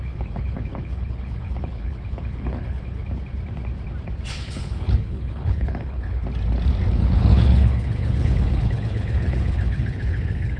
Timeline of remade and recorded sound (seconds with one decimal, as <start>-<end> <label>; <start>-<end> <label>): 0.0-3.0 remade; 3.0-4.3 recorded; 4.3-6.2 remade; 6.2-6.9 recorded; 6.9-10.6 remade

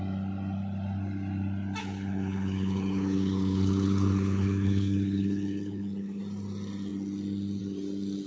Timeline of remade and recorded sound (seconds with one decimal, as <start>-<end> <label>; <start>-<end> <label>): 0.0-1.8 recorded; 1.8-6.2 remade; 6.2-8.3 recorded